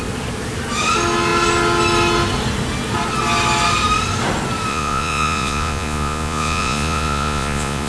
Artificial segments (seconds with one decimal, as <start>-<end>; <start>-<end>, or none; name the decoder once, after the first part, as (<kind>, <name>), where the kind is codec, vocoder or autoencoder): 4.7-7.9 (vocoder, Vocos)